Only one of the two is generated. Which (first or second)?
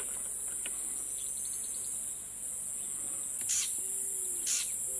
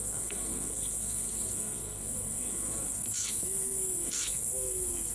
second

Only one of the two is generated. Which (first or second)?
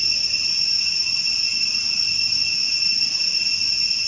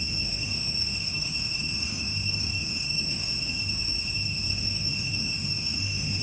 second